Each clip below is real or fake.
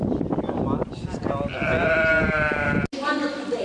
real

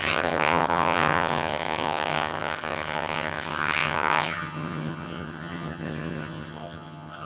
fake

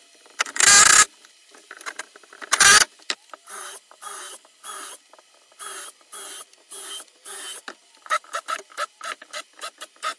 real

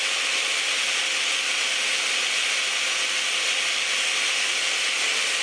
real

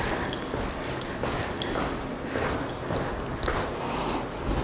real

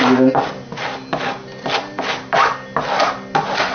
real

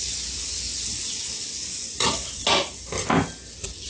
real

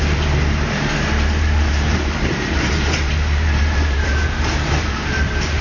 fake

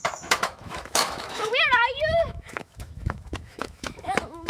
fake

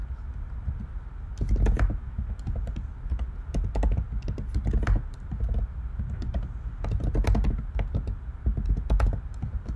real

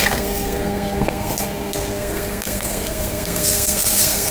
fake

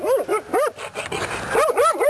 real